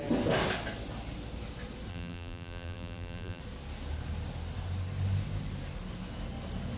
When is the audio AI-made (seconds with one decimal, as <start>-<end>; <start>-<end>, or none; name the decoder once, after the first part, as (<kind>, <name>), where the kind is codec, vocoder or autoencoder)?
1.9-3.4 (vocoder, BigVGAN v2)